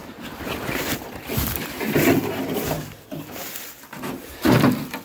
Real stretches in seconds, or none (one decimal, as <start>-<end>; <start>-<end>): 2.8-5.0